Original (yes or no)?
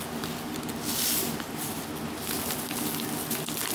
yes